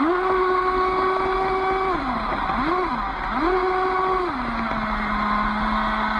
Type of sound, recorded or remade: recorded